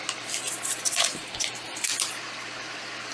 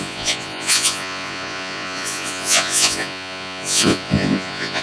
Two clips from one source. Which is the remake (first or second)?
second